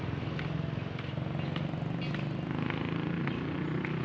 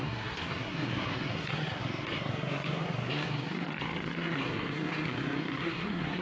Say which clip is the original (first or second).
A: first